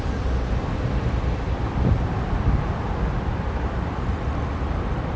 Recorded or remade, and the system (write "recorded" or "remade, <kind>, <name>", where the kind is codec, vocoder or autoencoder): remade, vocoder, BigVGAN v2